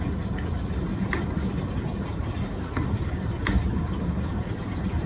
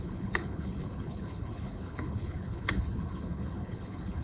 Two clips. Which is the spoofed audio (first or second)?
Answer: second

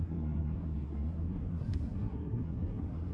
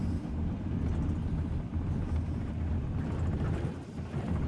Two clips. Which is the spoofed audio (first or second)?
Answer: first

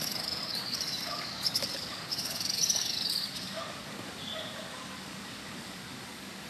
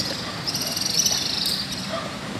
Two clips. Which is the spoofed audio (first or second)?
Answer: first